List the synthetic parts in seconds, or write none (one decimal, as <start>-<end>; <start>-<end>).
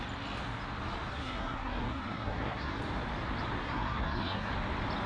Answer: 1.1-2.8; 3.6-4.5